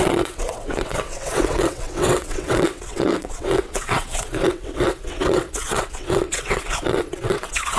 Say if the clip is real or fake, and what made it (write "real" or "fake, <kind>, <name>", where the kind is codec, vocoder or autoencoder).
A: fake, vocoder, WaveNeXt